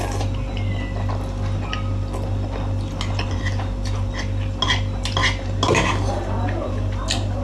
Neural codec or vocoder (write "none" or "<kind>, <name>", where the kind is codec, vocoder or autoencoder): none